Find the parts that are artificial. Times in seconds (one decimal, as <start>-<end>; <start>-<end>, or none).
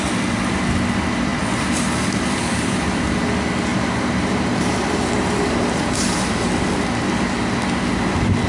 1.3-3.0; 3.7-6.5